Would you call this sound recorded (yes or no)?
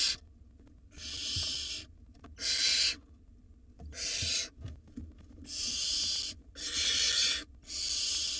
yes